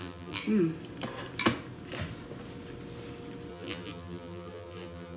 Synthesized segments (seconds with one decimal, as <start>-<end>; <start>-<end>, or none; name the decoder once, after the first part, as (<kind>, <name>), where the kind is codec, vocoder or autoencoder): 0.0-0.4 (vocoder, BigVGAN v2); 3.5-5.2